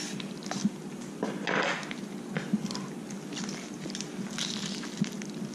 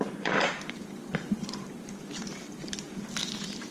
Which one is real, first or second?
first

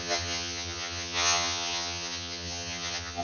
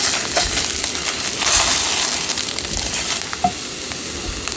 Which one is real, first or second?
second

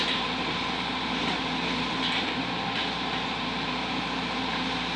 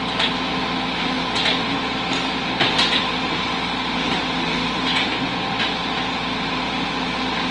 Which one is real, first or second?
second